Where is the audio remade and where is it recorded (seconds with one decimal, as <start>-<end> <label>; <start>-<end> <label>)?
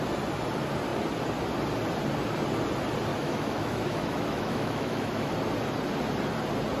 0.0-3.1 recorded; 3.1-5.3 remade; 5.3-6.8 recorded